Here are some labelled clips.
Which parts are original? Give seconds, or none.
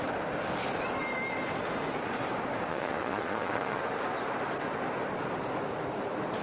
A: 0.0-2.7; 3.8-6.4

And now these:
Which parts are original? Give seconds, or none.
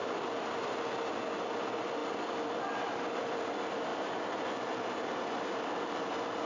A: 0.0-6.5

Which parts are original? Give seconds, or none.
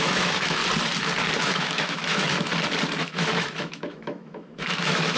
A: 0.6-1.4; 2.5-3.0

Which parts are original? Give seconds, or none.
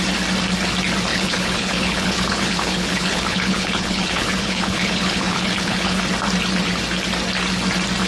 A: 0.0-1.1; 6.0-8.1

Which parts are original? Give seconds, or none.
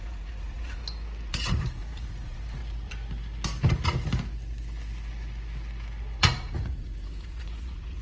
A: 0.8-1.3; 2.6-6.2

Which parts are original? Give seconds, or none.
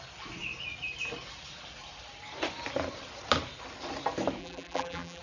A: 0.0-4.4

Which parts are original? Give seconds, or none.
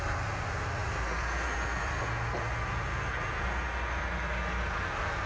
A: 0.0-5.3